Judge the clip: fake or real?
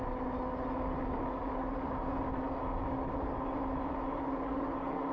real